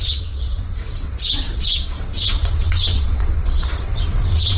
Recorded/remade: remade